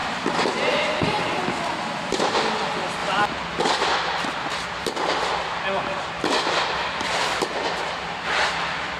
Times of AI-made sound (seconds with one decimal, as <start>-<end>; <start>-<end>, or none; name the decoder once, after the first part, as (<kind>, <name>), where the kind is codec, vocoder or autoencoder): none